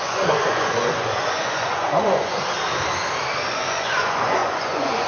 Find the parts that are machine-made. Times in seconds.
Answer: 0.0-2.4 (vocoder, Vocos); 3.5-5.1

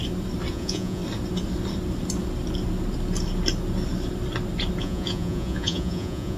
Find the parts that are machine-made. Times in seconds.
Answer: 0.5-1.0 (vocoder, Vocos); 4.8-6.4

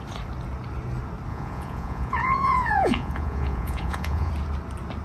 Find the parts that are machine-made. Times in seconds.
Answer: 1.3-4.3 (vocoder, Vocos)

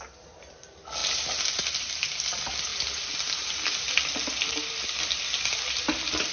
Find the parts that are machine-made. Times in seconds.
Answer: none

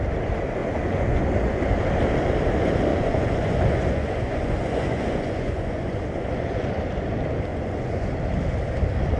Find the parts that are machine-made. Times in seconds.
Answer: 0.6-1.7 (vocoder, Vocos); 2.9-6.8; 7.5-8.1